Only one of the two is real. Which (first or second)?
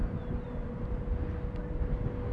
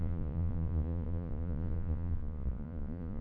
first